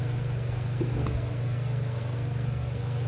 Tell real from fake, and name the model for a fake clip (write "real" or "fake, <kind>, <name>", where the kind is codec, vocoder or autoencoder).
fake, codec, SNAC